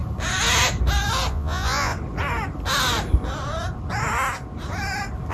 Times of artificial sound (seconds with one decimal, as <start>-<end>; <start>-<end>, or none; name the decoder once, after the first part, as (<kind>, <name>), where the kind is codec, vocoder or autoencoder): 1.3-1.9 (vocoder, Vocos)